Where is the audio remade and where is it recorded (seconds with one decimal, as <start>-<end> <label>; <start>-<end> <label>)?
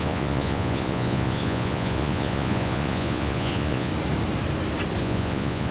0.0-3.9 remade; 3.9-5.0 recorded; 5.0-5.7 remade